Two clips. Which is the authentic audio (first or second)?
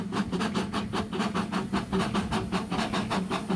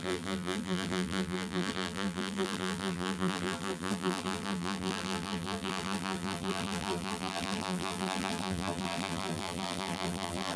first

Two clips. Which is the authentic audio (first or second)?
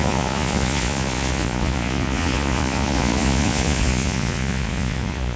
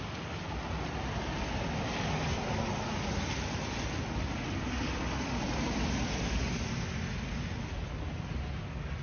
second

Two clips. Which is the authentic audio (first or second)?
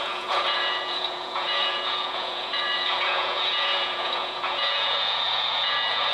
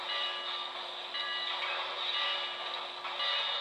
second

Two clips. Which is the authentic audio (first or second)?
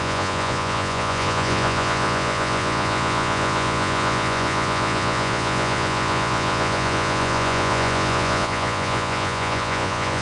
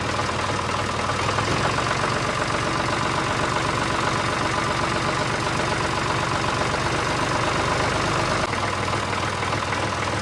second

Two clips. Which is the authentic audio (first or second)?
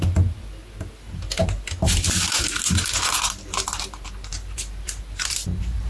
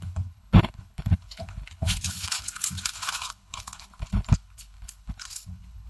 first